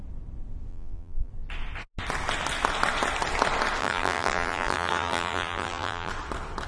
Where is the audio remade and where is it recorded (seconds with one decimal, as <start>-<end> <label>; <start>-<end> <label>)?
0.0-0.7 recorded; 0.7-1.3 remade; 1.3-3.8 recorded; 3.8-6.1 remade; 6.1-6.7 recorded